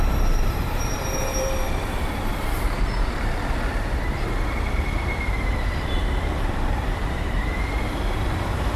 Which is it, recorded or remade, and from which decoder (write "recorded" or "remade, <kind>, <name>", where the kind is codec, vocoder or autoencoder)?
remade, vocoder, BigVGAN v2